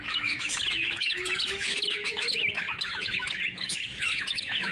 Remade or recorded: remade